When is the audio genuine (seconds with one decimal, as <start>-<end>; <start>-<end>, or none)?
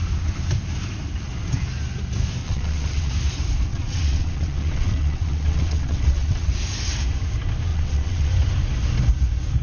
0.0-2.4; 3.1-3.7; 6.5-7.7; 8.3-9.6